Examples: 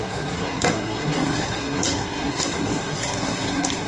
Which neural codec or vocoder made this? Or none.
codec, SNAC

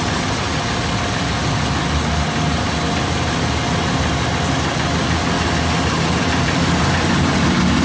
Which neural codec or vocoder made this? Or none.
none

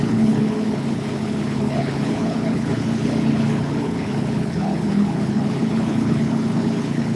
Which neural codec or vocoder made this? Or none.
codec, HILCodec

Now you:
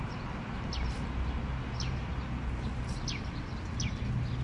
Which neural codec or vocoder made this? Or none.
none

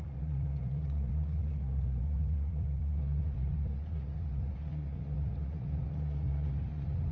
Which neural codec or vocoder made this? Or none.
vocoder, Vocos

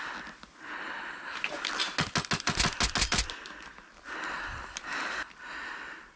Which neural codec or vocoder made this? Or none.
none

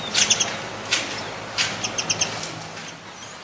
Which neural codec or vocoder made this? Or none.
none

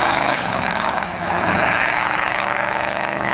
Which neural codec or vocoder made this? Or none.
codec, HILCodec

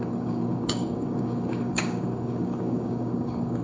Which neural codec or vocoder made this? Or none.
codec, DAC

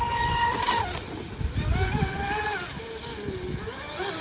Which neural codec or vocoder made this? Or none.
none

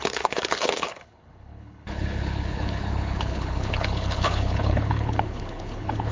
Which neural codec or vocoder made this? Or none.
codec, HILCodec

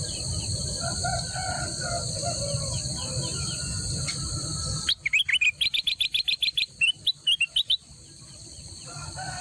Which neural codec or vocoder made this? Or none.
vocoder, BigVGAN v2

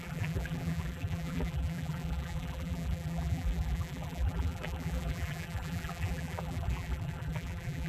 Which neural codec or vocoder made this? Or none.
vocoder, BigVGAN v2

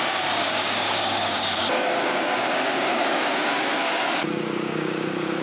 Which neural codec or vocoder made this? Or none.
codec, DAC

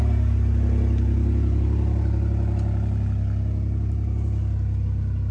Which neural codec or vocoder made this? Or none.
none